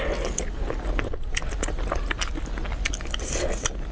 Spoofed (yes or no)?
no